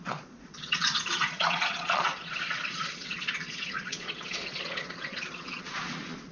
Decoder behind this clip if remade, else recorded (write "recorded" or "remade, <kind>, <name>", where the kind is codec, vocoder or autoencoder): remade, vocoder, Vocos